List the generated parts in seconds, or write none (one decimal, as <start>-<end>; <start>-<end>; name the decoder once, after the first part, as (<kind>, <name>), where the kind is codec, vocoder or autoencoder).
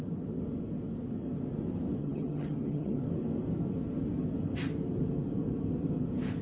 2.0-3.0 (vocoder, HiFi-GAN)